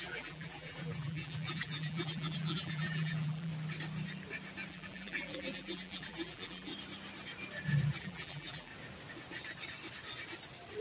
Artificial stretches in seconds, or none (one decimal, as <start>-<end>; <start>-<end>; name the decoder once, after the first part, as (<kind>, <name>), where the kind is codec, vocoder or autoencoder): 0.0-3.5 (vocoder, BigVGAN v2); 4.7-6.7; 8.0-8.7

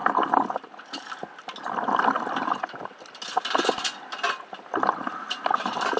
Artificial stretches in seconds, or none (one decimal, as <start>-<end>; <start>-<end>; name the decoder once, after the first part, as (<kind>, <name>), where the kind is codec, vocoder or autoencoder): none